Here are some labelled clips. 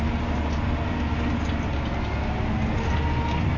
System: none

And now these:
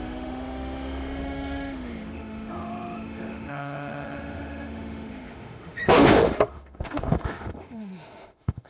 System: autoencoder, DAC-VAE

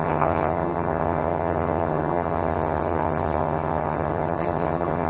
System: vocoder, HiFi-GAN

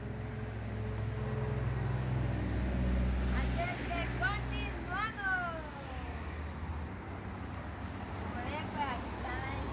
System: none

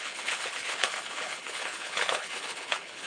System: codec, HILCodec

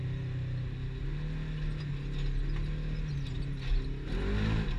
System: none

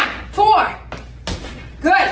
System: none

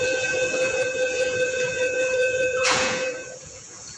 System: vocoder, Vocos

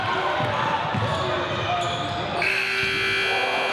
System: none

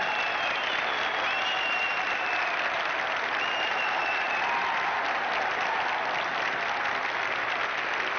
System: none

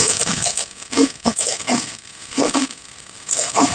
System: codec, SNAC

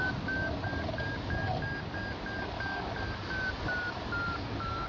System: none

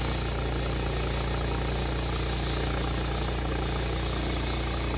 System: none